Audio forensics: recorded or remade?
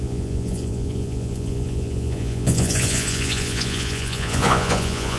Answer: remade